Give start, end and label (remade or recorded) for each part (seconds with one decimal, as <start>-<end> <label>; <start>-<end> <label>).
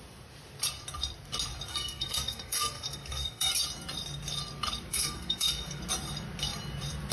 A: 0.0-1.7 recorded; 1.7-3.5 remade; 3.5-4.9 recorded; 4.9-5.8 remade; 5.8-7.1 recorded